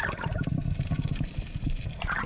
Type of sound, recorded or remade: remade